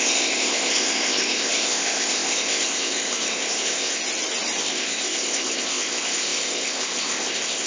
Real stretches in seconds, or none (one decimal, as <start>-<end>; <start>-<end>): 4.0-4.6